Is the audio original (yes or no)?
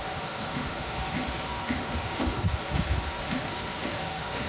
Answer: no